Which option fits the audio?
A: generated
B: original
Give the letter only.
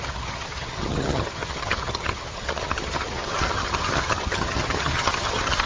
A